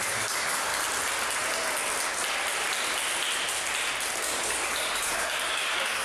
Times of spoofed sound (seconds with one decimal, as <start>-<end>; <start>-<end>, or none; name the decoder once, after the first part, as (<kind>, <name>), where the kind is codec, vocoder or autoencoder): 0.0-0.7 (codec, DAC); 4.2-6.0